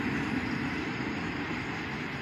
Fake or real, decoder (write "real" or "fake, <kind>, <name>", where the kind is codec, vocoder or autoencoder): real